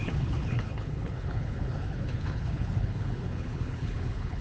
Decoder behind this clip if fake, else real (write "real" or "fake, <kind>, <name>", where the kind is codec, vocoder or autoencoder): fake, codec, HILCodec